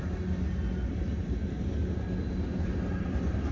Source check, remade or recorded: recorded